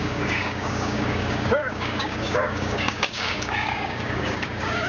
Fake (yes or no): yes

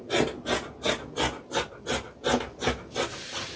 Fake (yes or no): no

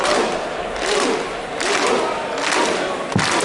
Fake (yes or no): no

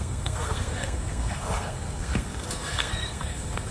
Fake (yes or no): yes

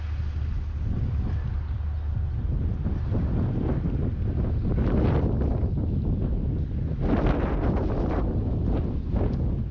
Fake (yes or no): no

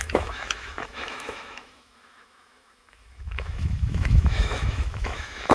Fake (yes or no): yes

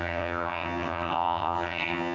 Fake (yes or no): yes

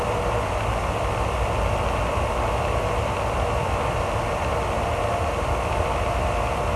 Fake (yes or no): no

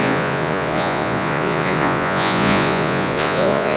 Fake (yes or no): yes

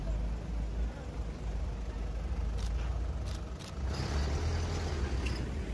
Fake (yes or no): no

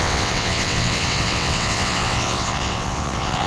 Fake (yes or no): yes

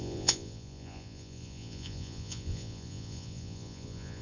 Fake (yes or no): yes